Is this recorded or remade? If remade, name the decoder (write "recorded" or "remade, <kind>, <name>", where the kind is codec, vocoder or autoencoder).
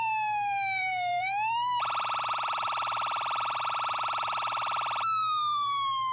remade, vocoder, BigVGAN v2